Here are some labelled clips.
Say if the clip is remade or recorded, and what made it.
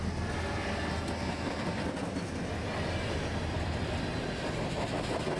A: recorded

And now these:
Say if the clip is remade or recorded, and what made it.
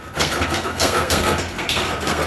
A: remade, codec, SNAC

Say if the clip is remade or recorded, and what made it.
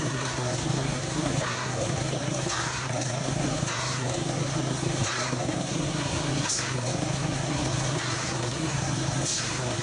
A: remade, codec, SNAC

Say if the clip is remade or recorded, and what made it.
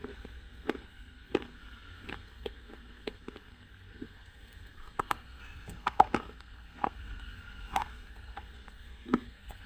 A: remade, codec, SNAC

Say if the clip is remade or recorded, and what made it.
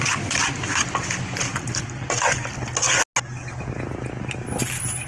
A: recorded